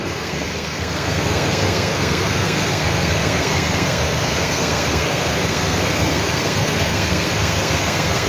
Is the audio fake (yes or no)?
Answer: yes